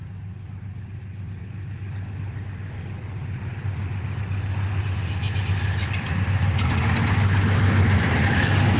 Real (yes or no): yes